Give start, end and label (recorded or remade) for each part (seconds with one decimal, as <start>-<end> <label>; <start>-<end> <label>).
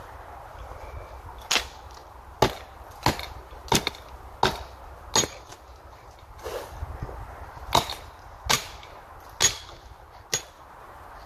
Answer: 0.0-11.3 recorded